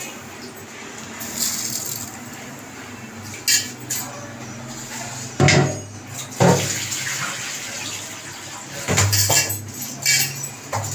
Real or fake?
real